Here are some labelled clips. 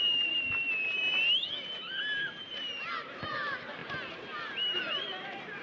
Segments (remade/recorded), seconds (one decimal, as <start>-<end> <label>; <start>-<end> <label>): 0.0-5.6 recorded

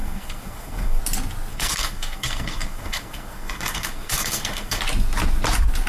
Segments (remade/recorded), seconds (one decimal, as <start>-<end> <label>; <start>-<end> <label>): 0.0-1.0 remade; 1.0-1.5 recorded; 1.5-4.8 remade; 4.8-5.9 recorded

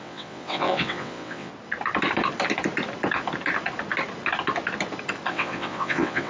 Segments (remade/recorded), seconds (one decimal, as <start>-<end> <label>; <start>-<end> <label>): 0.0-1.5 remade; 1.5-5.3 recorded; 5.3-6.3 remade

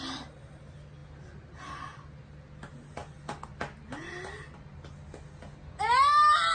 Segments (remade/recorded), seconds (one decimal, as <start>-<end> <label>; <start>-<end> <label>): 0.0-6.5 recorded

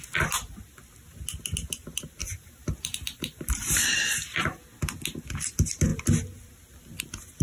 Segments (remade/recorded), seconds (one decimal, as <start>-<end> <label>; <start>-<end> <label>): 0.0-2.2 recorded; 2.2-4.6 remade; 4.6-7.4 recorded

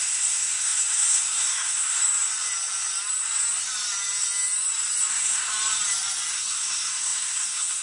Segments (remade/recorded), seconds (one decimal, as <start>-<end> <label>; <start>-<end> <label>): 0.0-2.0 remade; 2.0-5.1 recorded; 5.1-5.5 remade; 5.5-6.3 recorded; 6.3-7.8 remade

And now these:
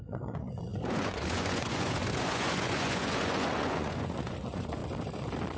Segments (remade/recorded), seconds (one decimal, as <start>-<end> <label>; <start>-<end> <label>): 0.0-4.8 remade; 4.8-5.6 recorded

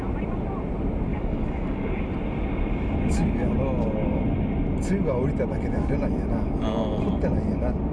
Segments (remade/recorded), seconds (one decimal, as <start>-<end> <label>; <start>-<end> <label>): 0.0-1.1 recorded; 1.1-2.0 remade; 2.0-7.9 recorded